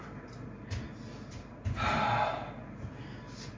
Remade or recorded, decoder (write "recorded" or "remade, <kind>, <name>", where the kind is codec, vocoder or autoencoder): recorded